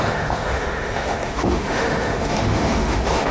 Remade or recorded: remade